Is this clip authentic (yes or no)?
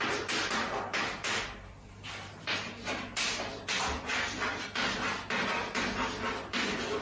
yes